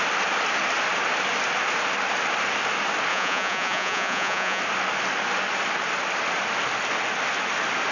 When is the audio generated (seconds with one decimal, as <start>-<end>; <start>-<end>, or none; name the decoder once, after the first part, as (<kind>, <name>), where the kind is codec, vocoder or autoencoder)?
3.1-4.6 (vocoder, Vocos)